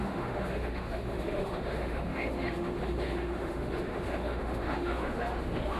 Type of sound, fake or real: fake